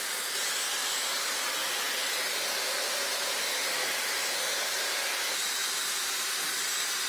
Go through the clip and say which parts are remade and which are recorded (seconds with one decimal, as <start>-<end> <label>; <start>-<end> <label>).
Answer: 0.0-7.1 recorded